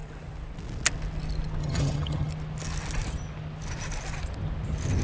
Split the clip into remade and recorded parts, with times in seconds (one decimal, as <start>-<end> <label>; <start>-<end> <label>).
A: 0.0-1.6 recorded; 1.6-2.3 remade; 2.3-5.0 recorded